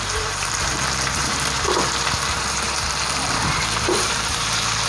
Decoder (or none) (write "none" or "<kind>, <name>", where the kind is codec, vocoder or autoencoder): vocoder, BigVGAN v2